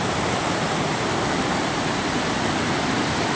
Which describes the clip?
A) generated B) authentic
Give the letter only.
B